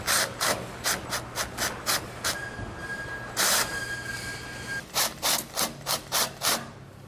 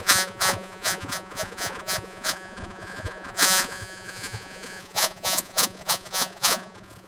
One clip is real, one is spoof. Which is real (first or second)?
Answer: first